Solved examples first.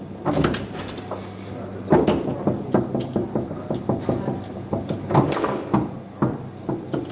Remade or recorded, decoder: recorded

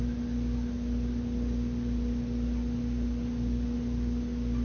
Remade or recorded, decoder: recorded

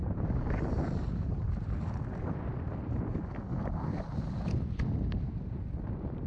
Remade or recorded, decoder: recorded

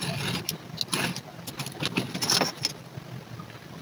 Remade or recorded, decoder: recorded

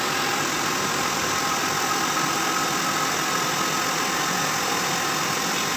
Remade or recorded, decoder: recorded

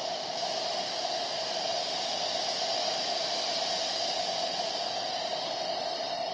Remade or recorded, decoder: recorded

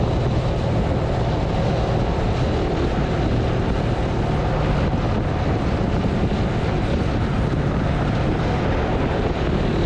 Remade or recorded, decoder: recorded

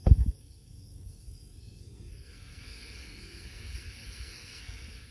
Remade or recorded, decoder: remade, codec, SNAC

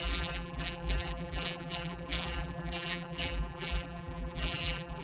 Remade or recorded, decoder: remade, vocoder, BigVGAN v2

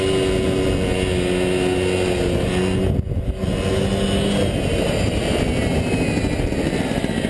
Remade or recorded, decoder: recorded